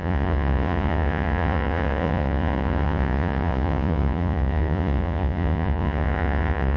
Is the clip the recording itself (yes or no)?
no